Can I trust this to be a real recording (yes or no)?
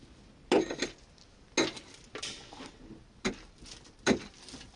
yes